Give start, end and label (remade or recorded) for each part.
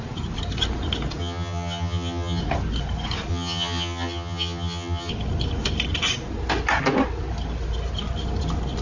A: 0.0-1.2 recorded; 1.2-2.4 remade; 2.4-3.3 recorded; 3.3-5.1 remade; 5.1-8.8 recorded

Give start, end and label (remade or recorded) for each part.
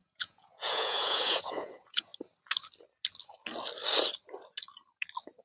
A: 0.0-2.1 remade; 2.1-5.4 recorded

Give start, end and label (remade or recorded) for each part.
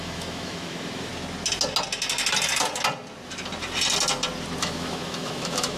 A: 0.0-1.1 remade; 1.1-4.6 recorded; 4.6-5.8 remade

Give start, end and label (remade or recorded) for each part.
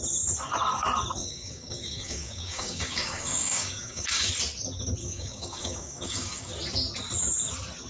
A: 0.0-1.2 recorded; 1.2-4.3 remade; 4.3-5.0 recorded; 5.0-6.5 remade; 6.5-7.9 recorded